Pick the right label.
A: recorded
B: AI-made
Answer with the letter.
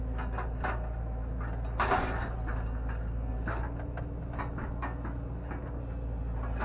A